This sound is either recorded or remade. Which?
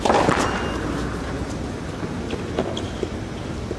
recorded